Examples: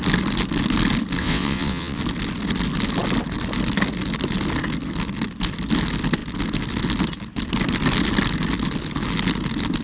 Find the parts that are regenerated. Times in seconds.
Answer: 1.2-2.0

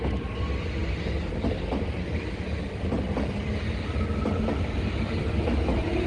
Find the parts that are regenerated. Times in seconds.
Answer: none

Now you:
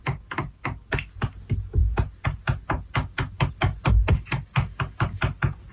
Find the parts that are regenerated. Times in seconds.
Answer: none

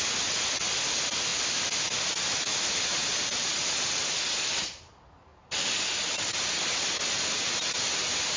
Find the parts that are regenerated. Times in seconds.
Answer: none

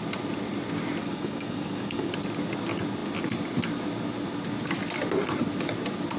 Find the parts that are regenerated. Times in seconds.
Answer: 1.0-2.1